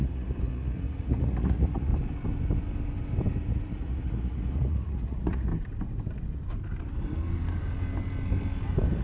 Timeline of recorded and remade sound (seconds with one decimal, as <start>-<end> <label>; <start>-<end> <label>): 0.0-1.9 remade; 1.9-3.5 recorded; 3.5-5.5 remade; 5.5-9.0 recorded